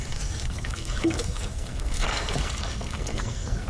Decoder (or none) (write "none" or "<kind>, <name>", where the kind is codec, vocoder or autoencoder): codec, SNAC